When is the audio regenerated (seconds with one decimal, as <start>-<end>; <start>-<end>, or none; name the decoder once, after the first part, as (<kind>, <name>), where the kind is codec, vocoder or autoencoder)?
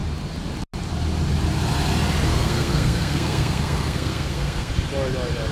2.3-4.7 (codec, SNAC)